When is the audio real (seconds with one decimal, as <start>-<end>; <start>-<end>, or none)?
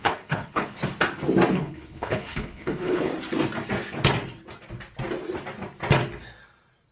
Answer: 0.8-1.5; 3.1-6.9